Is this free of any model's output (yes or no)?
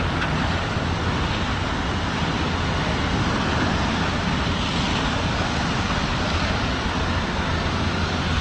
yes